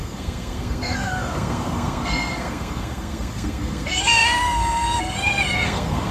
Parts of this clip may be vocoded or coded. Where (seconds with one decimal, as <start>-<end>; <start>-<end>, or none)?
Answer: 0.0-6.1

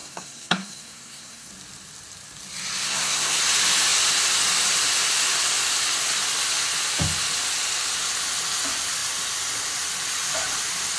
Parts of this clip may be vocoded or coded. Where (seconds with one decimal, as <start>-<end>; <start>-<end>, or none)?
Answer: 0.0-1.5; 2.8-3.4